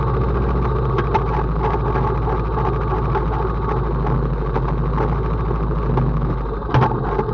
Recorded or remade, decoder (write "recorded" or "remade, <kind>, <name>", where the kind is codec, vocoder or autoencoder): recorded